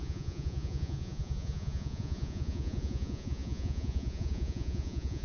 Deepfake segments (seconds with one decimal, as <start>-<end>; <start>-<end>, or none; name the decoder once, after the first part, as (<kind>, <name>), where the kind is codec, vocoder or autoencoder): 0.0-5.2 (vocoder, Vocos)